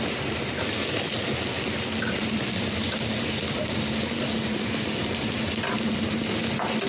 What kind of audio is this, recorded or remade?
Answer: recorded